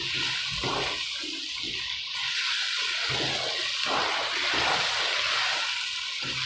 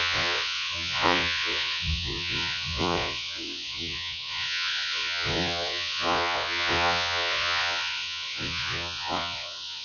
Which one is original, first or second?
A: first